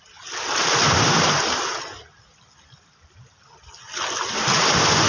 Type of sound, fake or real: real